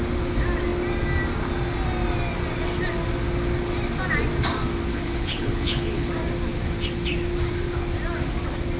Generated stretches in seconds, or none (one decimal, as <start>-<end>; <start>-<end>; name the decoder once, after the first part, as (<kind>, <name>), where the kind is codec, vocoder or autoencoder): 4.9-6.1 (codec, HILCodec)